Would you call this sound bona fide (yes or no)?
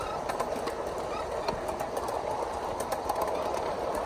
yes